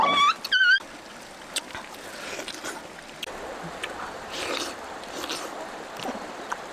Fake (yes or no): no